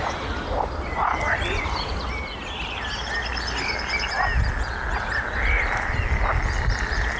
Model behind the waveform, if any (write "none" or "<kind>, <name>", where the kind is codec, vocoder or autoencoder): none